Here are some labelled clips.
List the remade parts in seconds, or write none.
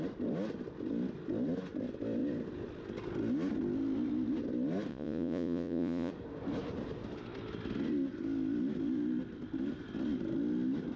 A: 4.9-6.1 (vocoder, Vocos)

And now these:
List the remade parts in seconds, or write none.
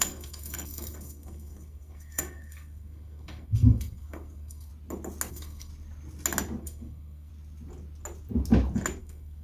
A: 0.0-4.7 (codec, SNAC); 5.3-5.7; 6.6-7.3; 9.0-9.4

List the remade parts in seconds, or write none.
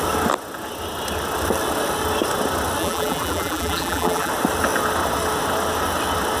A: 2.8-4.3 (vocoder, BigVGAN v2)